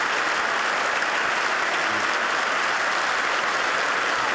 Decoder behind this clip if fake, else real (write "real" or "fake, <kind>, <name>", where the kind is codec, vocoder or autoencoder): real